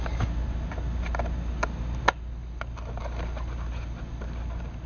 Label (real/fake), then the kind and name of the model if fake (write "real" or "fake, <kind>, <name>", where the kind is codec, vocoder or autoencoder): real